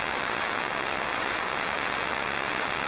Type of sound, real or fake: fake